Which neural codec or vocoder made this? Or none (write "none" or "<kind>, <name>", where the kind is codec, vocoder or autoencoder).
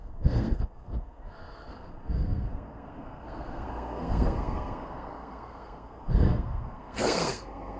codec, SNAC